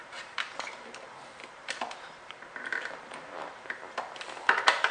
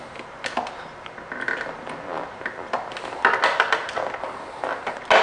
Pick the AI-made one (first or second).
first